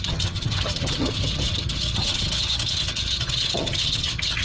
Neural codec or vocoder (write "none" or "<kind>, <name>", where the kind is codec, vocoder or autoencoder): vocoder, HiFi-GAN